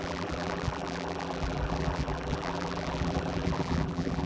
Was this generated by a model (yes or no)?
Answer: yes